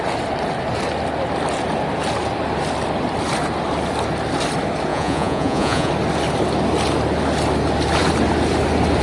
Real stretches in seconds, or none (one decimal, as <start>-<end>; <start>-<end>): 0.0-4.9; 5.9-9.0